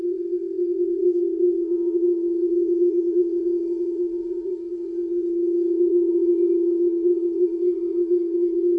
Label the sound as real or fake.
fake